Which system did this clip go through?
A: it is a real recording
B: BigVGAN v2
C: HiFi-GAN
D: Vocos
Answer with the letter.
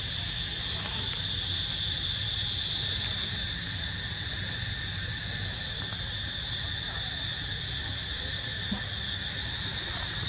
A